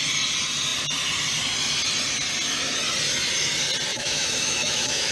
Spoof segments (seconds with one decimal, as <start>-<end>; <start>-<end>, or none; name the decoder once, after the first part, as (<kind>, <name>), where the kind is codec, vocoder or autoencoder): 3.9-5.1 (autoencoder, DAC-VAE)